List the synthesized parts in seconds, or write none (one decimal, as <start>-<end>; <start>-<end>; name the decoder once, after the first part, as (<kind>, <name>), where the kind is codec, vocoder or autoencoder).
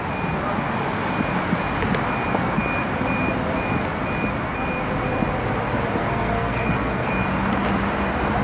6.0-7.1 (codec, SNAC)